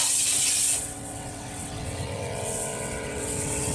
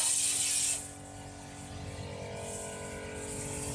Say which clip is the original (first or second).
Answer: second